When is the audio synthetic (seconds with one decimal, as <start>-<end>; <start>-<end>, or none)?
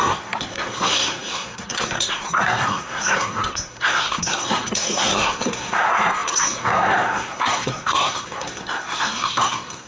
0.0-9.9